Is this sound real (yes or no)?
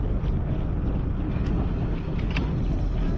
yes